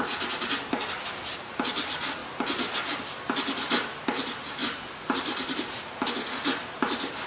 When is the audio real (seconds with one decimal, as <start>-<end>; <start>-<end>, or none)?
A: 0.0-1.8; 2.2-3.2